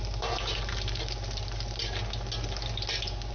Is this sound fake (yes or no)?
no